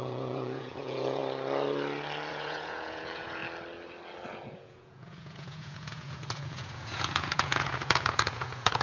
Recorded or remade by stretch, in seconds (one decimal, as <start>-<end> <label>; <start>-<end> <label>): 0.0-1.2 remade; 1.2-2.3 recorded; 2.3-3.4 remade; 3.4-4.3 recorded; 4.3-8.8 remade

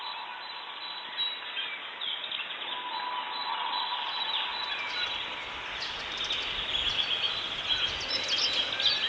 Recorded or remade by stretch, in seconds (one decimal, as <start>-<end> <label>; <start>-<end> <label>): 0.0-9.1 recorded

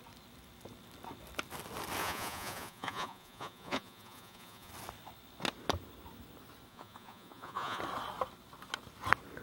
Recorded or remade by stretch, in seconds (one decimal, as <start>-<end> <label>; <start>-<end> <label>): 0.0-2.0 recorded; 2.0-4.7 remade; 4.7-6.7 recorded; 6.7-7.8 remade; 7.8-9.4 recorded

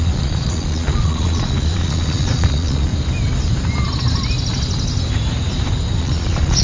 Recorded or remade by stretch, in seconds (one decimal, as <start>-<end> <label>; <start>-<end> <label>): 0.0-2.9 remade; 2.9-6.0 recorded; 6.0-6.6 remade